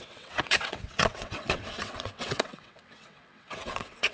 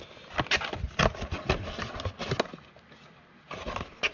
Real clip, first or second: second